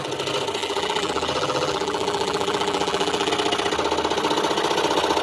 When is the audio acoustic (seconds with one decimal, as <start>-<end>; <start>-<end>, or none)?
0.0-0.6; 3.3-5.2